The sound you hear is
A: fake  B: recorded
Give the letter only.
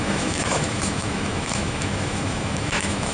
A